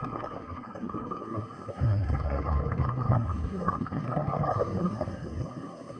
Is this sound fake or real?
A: fake